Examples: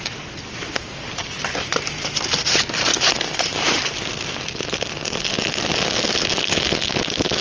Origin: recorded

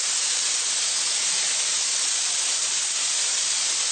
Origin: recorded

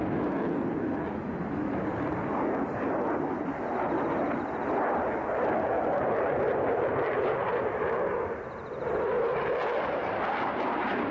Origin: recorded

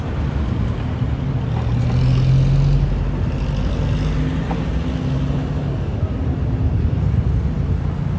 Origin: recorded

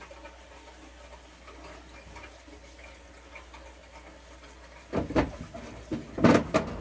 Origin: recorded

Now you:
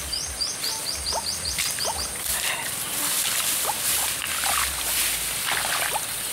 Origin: recorded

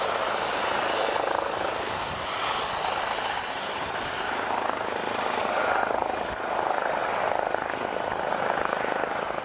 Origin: recorded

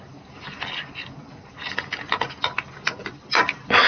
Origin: recorded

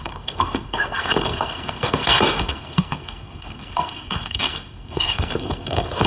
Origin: remade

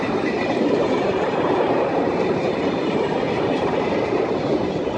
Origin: remade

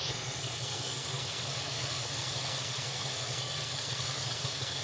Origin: remade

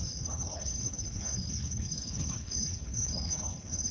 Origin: remade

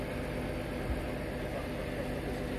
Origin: recorded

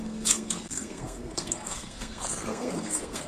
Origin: remade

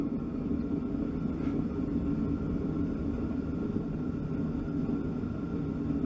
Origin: recorded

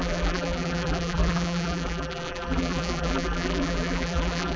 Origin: remade